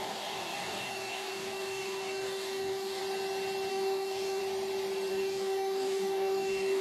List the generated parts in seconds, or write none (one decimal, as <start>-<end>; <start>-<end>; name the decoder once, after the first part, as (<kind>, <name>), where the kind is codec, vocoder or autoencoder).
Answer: 0.0-3.0 (codec, DAC); 3.7-4.4; 5.1-6.8